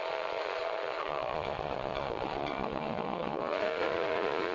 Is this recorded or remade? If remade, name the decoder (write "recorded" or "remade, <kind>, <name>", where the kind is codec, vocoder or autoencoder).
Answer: remade, vocoder, Vocos